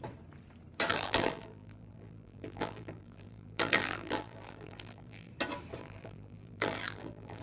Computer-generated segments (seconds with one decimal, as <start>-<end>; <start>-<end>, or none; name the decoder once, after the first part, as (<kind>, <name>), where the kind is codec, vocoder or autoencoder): 0.9-5.3 (vocoder, BigVGAN v2); 5.8-7.4